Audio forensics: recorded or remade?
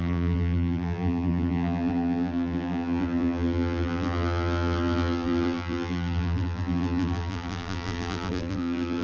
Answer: remade